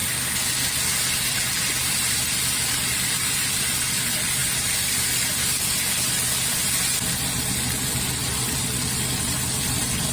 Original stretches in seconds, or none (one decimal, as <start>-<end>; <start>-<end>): 0.0-3.6; 4.4-9.6